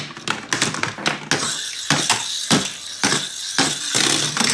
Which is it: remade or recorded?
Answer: recorded